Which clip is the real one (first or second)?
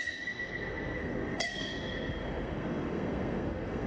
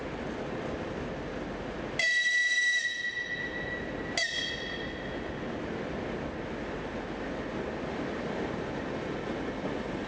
second